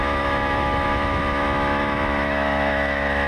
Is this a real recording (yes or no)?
no